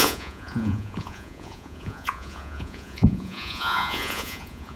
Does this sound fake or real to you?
fake